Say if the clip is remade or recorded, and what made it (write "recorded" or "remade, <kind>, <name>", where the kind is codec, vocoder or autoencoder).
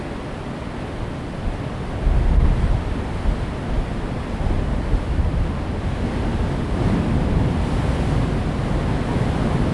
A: recorded